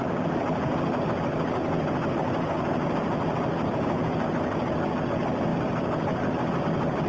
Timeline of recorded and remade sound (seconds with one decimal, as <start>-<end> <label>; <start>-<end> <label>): 0.0-5.5 recorded; 5.5-6.6 remade; 6.6-7.1 recorded